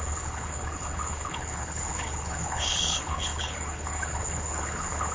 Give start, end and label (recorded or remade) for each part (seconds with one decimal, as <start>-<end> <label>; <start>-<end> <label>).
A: 0.0-5.1 remade